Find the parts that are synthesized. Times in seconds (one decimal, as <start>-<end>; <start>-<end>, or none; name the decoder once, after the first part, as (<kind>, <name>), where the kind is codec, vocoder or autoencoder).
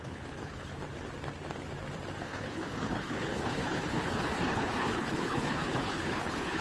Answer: 0.0-0.7 (codec, HILCodec); 2.2-6.6